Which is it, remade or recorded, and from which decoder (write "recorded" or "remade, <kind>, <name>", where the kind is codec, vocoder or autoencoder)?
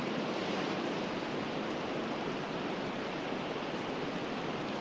recorded